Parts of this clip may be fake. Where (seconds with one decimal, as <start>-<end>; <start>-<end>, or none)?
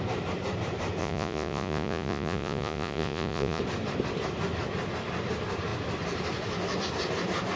1.0-3.6